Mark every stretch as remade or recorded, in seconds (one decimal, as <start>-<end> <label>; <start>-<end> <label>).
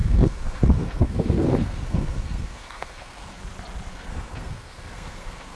0.0-3.4 remade; 3.4-3.9 recorded; 3.9-5.6 remade